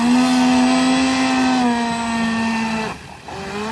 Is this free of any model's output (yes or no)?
yes